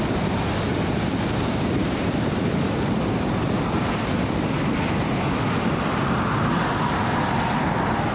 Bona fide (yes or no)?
yes